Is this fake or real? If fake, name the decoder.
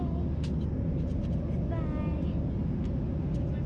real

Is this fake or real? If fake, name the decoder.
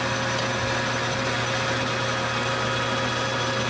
real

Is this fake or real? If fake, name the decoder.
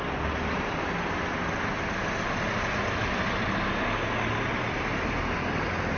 real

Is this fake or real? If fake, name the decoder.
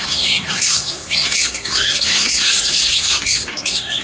fake, codec, SNAC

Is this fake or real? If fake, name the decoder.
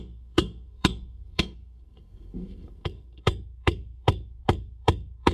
fake, codec, SNAC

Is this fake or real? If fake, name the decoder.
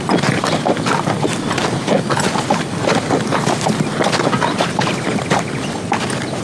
real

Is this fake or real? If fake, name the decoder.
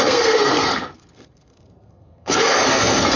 fake, codec, SNAC